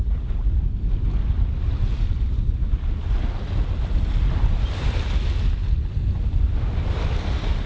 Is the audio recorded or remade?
recorded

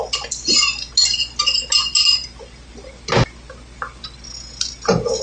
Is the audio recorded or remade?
recorded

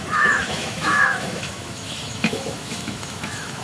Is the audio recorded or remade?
remade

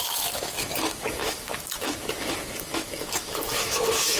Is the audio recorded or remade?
remade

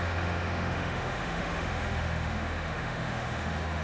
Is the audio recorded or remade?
remade